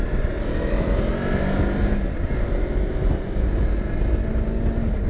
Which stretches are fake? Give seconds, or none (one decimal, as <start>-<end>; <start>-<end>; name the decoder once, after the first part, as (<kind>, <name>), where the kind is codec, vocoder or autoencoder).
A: none